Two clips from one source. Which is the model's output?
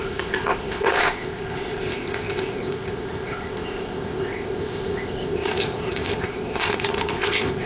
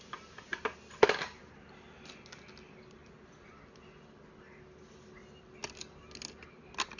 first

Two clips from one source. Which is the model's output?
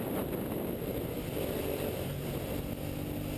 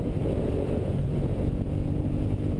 second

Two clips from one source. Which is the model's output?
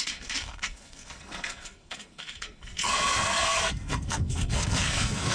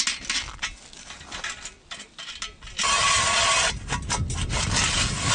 first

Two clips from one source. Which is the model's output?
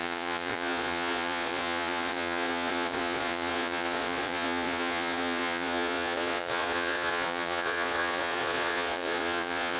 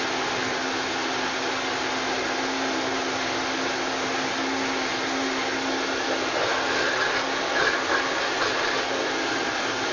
first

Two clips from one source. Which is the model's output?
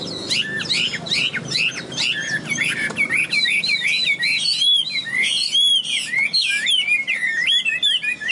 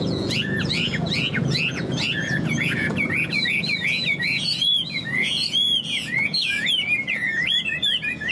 second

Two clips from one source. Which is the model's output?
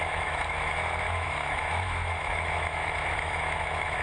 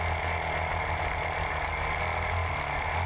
first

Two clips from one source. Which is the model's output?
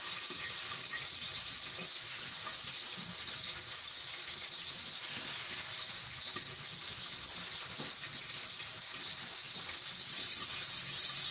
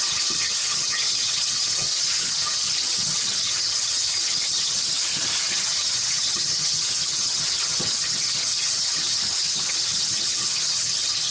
second